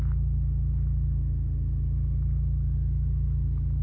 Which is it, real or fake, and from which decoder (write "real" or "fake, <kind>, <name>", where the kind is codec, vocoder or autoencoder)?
real